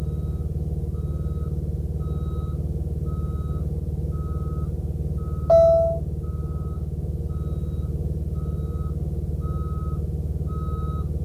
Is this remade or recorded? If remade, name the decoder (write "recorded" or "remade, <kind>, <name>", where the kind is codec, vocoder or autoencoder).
recorded